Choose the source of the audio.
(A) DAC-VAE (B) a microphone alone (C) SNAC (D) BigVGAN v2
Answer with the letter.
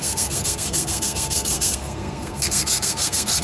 C